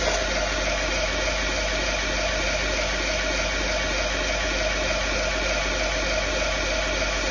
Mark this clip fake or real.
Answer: real